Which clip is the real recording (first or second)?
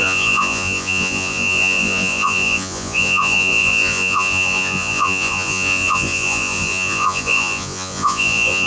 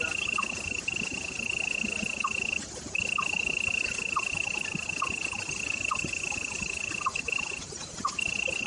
second